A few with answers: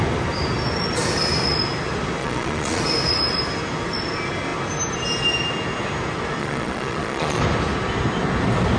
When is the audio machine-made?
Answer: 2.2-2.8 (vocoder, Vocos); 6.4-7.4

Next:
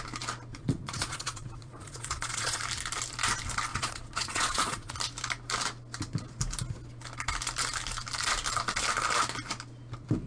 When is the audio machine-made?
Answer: 0.5-2.6 (vocoder, Vocos); 3.7-4.9